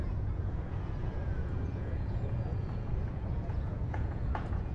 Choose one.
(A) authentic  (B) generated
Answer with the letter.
B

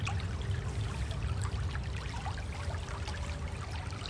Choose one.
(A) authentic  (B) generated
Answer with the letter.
A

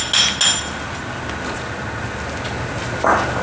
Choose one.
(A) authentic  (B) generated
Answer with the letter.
A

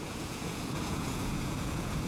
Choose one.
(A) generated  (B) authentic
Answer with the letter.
A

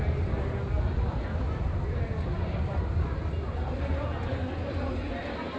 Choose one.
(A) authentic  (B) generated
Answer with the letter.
A